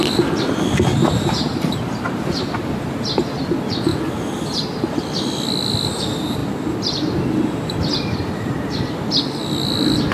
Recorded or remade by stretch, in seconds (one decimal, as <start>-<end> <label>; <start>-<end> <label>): 0.0-0.9 recorded; 0.9-2.4 remade; 2.4-10.1 recorded